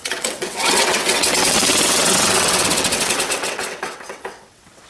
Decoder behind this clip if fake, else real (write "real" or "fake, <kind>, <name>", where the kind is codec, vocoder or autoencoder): fake, vocoder, WaveNeXt